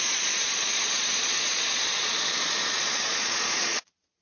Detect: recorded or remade remade